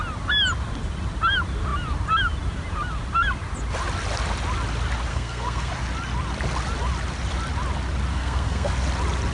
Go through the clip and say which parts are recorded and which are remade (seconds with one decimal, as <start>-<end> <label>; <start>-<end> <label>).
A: 0.0-5.1 recorded; 5.1-5.7 remade; 5.7-8.1 recorded; 8.1-8.7 remade; 8.7-9.3 recorded